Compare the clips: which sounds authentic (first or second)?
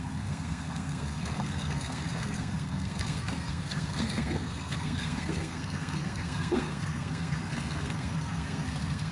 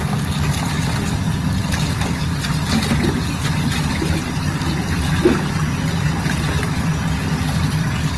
second